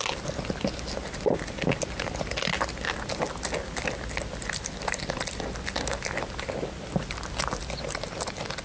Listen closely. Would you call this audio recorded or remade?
recorded